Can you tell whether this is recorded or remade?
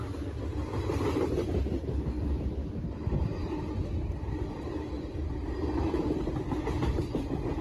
recorded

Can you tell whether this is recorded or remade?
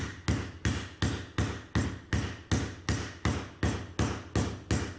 recorded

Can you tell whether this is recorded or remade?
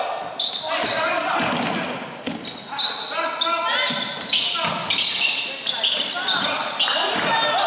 recorded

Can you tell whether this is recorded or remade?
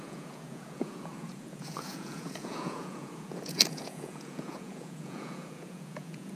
remade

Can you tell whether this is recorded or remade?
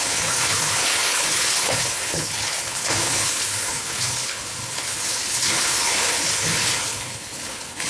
remade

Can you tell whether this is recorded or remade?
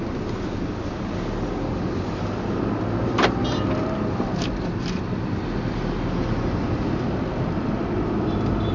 recorded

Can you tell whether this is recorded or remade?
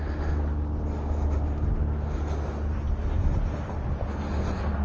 recorded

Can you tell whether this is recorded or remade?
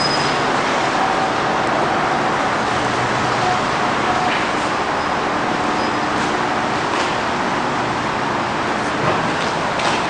recorded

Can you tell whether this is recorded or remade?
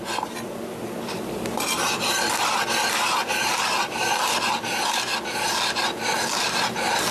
recorded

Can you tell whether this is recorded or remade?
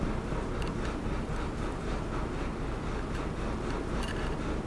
recorded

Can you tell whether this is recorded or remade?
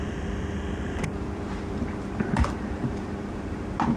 remade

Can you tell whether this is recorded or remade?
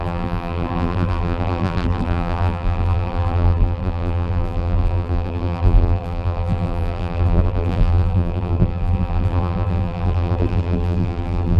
remade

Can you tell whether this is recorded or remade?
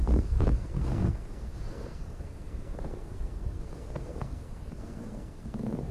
remade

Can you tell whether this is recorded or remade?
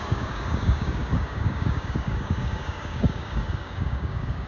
remade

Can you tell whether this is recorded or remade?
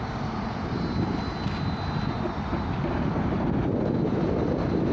recorded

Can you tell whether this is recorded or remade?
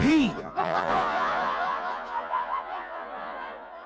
remade